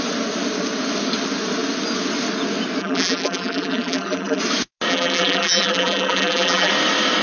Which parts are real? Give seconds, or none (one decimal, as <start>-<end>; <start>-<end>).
0.0-2.8; 4.4-4.9; 6.7-7.2